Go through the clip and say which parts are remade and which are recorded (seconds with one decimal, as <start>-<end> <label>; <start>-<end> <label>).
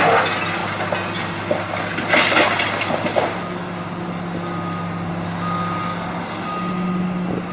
0.0-7.5 recorded